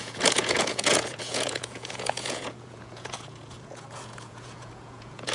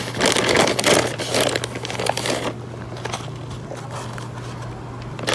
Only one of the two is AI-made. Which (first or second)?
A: first